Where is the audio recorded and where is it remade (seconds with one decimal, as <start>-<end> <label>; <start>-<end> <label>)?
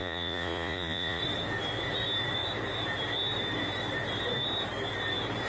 0.0-1.2 remade; 1.2-5.5 recorded